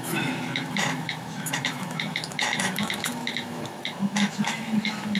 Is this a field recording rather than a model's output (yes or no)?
no